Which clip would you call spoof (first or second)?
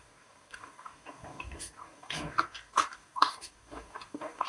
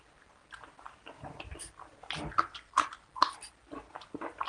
first